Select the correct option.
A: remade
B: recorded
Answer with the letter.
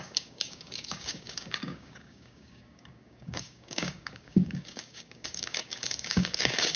A